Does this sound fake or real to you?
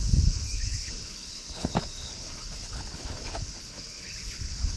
fake